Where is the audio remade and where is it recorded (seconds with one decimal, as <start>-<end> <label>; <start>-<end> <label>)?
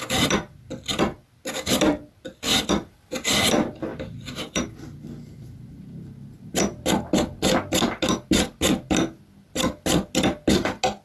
0.0-11.0 recorded